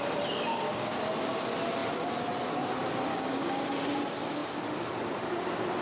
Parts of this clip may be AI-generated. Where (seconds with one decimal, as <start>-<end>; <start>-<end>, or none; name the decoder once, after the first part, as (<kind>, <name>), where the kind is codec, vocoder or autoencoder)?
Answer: 0.5-1.0 (codec, DAC); 3.1-3.6